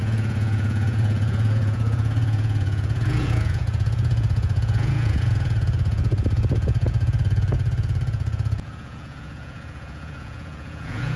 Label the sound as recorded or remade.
remade